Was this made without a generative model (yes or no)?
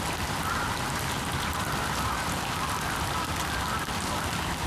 yes